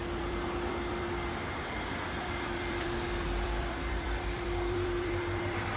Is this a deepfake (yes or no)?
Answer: yes